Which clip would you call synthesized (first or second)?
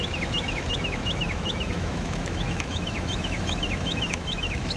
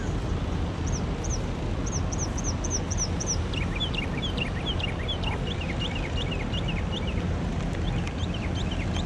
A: first